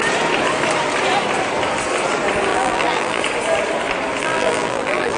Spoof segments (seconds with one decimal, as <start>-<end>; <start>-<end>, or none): 2.5-3.2; 4.2-5.2